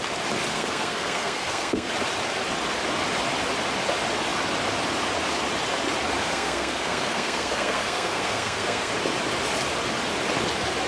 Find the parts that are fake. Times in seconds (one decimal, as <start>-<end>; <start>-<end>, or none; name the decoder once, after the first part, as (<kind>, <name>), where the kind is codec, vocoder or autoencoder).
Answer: 0.5-1.9 (codec, SNAC); 6.2-8.9